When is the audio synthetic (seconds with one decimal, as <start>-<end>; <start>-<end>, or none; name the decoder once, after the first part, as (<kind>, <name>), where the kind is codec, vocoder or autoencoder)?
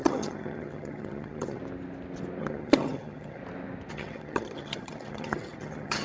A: 0.0-1.6 (vocoder, HiFi-GAN); 2.4-3.4; 3.9-6.0